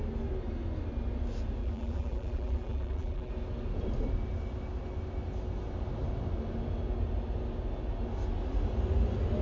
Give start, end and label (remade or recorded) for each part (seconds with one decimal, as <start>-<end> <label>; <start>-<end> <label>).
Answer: 0.0-1.6 recorded; 1.6-3.3 remade; 3.3-9.4 recorded